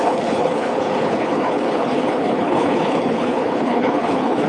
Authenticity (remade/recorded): remade